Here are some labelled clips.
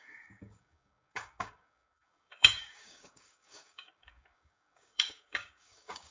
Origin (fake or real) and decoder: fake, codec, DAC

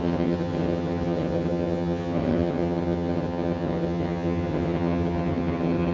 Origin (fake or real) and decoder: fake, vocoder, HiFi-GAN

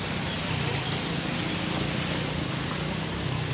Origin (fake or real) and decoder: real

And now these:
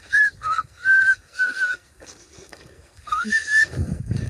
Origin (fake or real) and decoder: fake, codec, SNAC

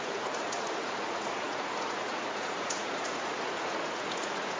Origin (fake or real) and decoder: fake, vocoder, Vocos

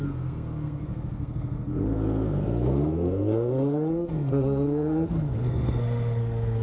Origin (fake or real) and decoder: fake, codec, SNAC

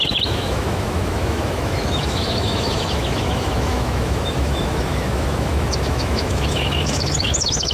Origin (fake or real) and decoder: fake, autoencoder, DAC-VAE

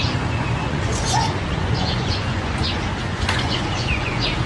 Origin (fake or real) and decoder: fake, vocoder, Vocos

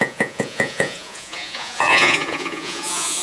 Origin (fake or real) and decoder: fake, vocoder, Vocos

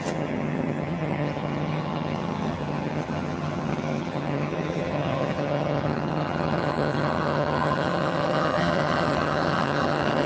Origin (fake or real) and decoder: fake, vocoder, HiFi-GAN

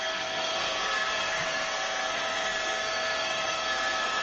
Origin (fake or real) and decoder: fake, codec, SNAC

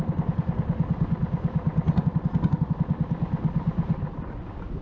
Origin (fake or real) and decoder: real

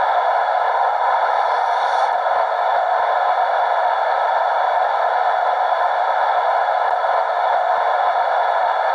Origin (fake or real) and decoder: fake, vocoder, BigVGAN v2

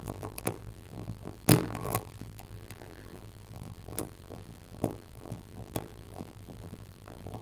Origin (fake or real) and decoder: fake, vocoder, BigVGAN v2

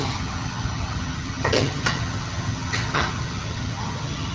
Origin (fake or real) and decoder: fake, vocoder, HiFi-GAN